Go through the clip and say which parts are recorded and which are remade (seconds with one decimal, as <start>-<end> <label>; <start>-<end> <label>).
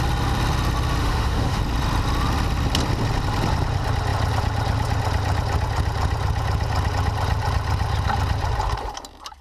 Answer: 0.0-1.0 recorded; 1.0-1.6 remade; 1.6-9.4 recorded